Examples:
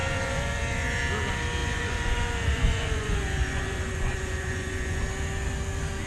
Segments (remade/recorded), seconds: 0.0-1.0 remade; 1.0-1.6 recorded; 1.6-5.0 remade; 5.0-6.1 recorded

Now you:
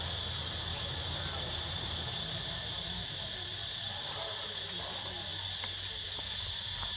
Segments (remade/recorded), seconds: 0.0-0.7 recorded; 0.7-4.5 remade; 4.5-7.0 recorded